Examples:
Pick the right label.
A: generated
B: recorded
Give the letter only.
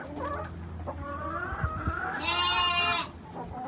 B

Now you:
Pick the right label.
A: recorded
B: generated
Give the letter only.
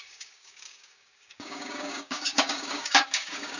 B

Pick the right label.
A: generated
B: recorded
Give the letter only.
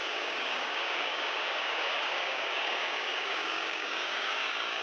A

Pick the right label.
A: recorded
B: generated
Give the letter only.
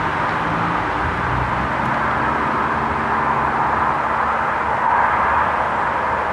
A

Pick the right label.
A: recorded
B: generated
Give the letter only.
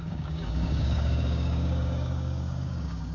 B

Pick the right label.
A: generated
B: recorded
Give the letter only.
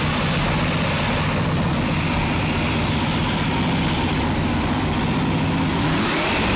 B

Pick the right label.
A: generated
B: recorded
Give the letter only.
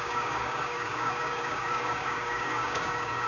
A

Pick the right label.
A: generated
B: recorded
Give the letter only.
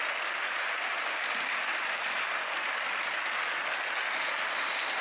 B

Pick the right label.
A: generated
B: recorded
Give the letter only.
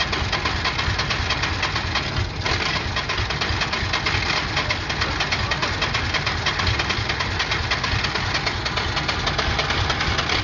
B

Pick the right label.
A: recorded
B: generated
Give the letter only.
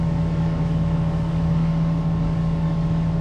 B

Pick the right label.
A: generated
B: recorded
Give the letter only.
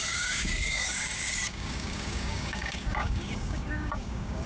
A